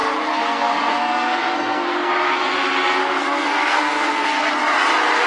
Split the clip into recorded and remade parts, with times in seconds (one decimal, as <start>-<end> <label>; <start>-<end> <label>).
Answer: 0.0-2.1 remade; 2.1-3.0 recorded; 3.0-4.5 remade; 4.5-5.3 recorded